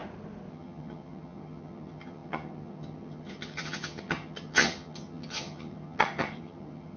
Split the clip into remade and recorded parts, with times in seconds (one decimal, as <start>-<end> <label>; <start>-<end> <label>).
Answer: 0.0-0.5 recorded; 0.5-7.0 remade